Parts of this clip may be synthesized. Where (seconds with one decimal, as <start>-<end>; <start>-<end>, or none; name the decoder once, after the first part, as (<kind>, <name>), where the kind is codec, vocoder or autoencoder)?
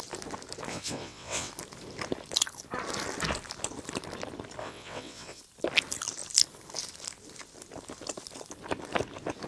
0.7-1.5 (vocoder, WaveNeXt); 4.6-5.4